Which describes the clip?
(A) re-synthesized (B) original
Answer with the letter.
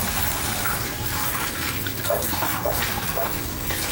A